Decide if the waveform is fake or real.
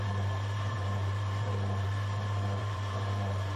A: fake